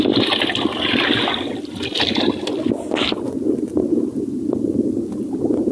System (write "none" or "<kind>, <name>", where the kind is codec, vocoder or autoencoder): none